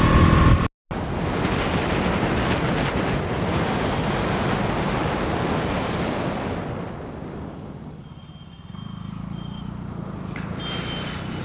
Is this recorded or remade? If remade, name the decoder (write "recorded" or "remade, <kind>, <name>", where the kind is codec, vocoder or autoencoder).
recorded